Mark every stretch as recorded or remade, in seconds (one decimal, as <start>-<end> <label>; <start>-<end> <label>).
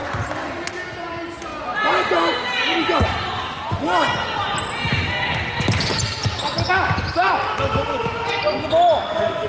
0.0-9.5 recorded